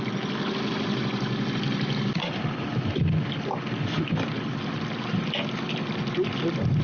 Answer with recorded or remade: recorded